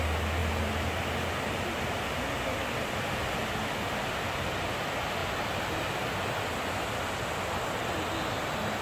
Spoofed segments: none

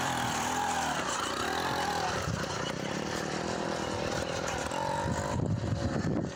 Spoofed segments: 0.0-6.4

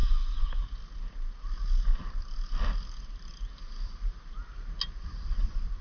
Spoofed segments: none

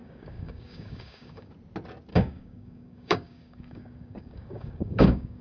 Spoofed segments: 0.0-1.5; 2.1-5.4

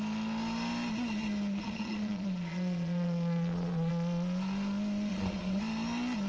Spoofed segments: 1.6-3.9; 5.1-5.6

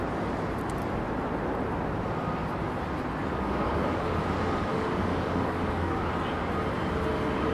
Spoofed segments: 3.2-4.2; 4.7-6.1

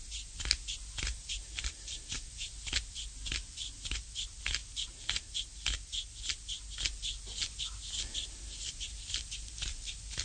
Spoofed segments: 1.1-2.0